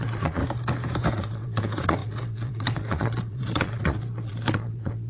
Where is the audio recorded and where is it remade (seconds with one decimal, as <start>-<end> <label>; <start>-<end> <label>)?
0.0-0.4 remade; 0.4-1.1 recorded; 1.1-5.1 remade